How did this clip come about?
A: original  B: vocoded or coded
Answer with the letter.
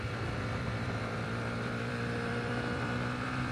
B